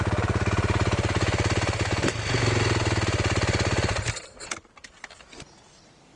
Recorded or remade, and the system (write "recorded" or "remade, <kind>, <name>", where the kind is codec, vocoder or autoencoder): recorded